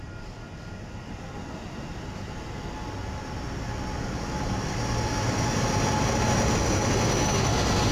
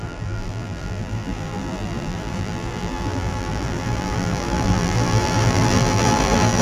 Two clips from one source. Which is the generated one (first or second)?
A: second